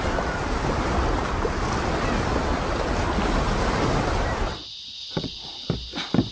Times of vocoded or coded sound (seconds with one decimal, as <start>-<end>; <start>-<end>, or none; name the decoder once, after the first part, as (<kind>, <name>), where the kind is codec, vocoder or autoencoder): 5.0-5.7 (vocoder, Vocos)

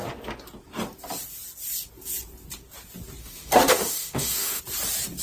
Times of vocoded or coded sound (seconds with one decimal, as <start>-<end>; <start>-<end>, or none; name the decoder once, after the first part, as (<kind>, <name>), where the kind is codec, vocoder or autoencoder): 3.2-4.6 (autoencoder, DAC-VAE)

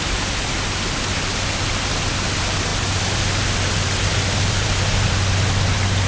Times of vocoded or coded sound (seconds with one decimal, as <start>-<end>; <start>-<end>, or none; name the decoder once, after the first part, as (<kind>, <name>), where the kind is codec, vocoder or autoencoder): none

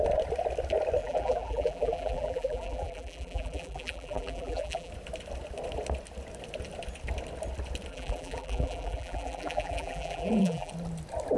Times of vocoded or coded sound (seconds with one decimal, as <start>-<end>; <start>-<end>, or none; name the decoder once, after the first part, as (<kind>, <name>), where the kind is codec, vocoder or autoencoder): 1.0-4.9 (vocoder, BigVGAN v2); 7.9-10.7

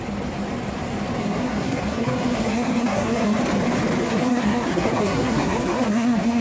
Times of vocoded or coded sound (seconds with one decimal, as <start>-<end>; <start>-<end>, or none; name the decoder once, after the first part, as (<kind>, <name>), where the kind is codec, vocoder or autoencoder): 1.2-3.4 (codec, SNAC); 4.0-6.4